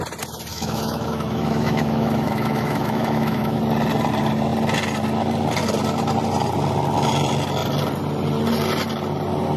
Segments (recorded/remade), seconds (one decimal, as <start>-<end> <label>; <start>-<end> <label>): 0.0-0.5 recorded; 0.5-3.6 remade; 3.6-9.6 recorded